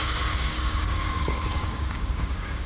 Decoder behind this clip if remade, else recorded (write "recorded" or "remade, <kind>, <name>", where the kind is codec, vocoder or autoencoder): remade, codec, DAC